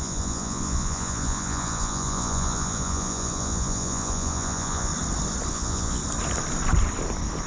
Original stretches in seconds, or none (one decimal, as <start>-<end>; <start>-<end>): 4.9-5.5; 6.0-7.5